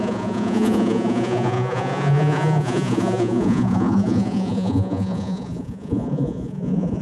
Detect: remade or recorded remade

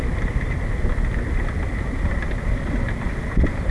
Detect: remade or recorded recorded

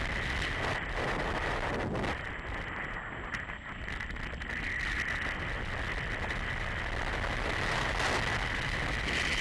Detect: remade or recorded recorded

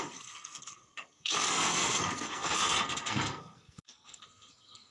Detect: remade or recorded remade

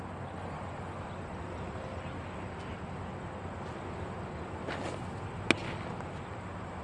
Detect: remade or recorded recorded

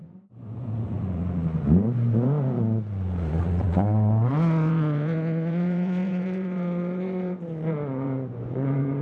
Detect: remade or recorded remade